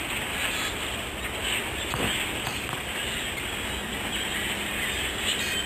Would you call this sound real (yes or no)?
yes